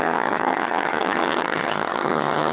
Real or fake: fake